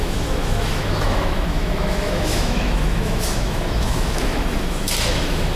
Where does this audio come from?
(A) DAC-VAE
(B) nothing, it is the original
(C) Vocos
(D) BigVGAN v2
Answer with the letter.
A